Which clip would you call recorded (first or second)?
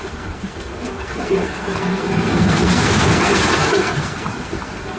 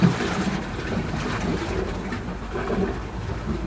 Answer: second